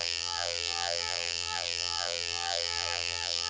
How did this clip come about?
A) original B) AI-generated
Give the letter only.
B